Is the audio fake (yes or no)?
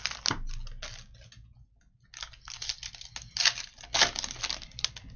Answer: no